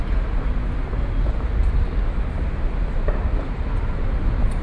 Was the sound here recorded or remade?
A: recorded